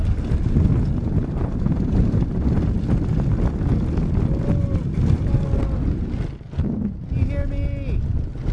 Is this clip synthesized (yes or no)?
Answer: no